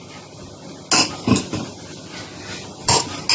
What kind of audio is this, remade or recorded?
recorded